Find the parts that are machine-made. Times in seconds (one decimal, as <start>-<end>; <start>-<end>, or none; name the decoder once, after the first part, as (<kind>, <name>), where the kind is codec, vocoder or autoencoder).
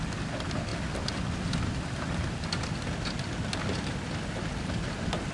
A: 0.7-2.7 (vocoder, BigVGAN v2)